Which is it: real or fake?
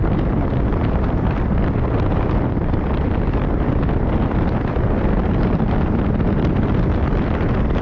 fake